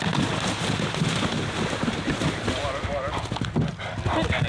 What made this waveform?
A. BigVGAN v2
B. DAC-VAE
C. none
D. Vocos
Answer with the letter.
C